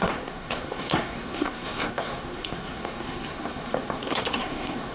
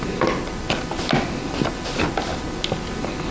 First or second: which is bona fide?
second